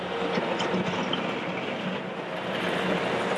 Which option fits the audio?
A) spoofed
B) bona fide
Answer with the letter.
B